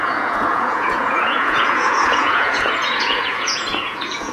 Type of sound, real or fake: fake